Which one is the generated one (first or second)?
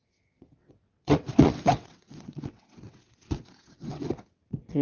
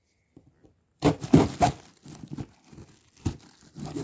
first